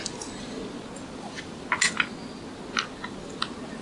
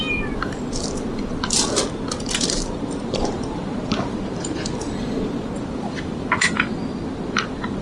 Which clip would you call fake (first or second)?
second